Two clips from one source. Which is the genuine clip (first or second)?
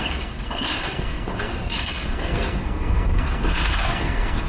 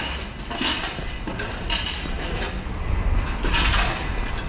second